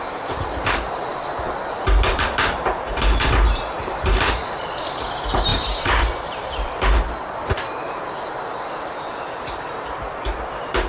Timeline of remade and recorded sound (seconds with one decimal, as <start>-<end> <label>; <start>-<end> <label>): 0.0-10.9 remade